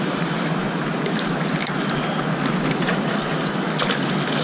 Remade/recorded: recorded